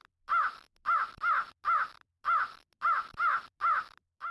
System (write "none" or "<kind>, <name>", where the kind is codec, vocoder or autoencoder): none